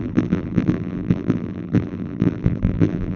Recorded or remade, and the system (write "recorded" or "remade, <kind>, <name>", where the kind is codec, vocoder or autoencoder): remade, vocoder, BigVGAN v2